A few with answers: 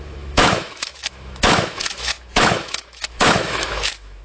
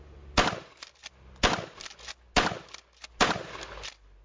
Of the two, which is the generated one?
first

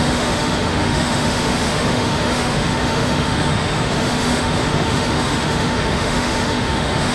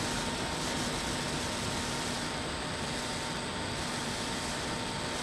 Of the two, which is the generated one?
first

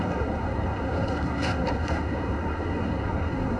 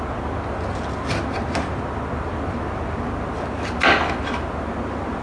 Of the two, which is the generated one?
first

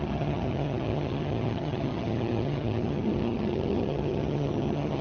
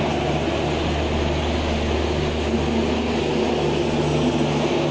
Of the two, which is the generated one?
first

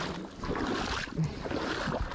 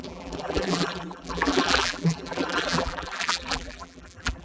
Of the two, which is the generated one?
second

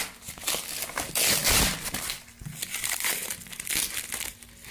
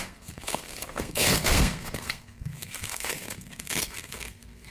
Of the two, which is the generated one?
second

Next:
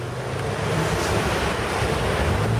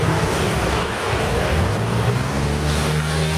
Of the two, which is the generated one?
second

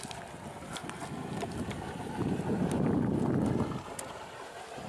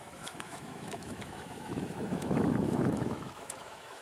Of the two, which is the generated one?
second